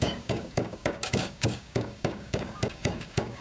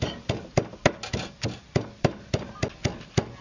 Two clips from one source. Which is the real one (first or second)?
second